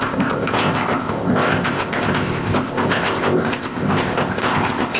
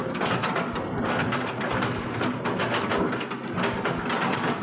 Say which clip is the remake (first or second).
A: first